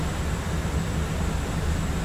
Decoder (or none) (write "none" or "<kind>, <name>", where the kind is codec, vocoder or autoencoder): none